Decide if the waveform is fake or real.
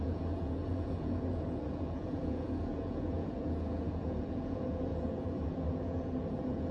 fake